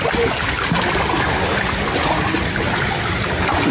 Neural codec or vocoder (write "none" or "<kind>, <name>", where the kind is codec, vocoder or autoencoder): none